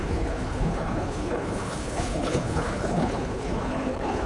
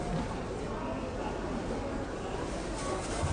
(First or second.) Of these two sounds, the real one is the second